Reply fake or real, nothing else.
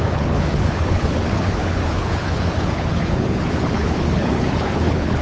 fake